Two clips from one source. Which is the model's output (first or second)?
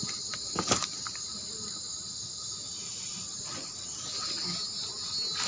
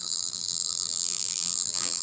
second